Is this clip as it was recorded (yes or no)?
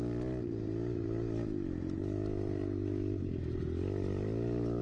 yes